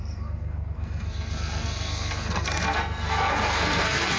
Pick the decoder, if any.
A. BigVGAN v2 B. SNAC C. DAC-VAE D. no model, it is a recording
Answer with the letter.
B